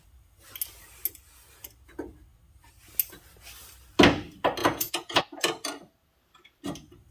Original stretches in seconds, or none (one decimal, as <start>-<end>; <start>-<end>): 0.0-4.6; 5.2-7.1